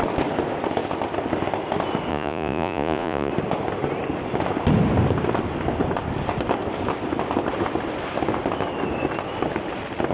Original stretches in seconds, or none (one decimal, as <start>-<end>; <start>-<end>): 0.0-2.1; 3.3-10.1